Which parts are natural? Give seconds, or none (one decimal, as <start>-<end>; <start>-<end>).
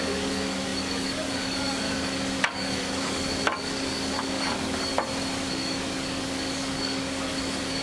4.9-5.5